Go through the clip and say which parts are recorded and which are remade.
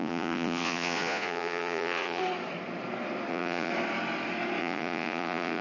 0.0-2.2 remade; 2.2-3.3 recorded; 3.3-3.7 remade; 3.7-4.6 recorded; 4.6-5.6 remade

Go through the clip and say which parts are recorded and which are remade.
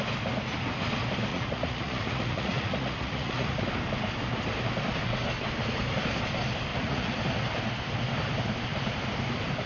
0.0-1.3 recorded; 1.3-3.6 remade; 3.6-6.7 recorded; 6.7-7.2 remade; 7.2-9.7 recorded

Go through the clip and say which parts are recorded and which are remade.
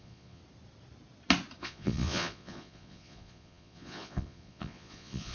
0.0-0.4 remade; 0.4-1.6 recorded; 1.6-5.3 remade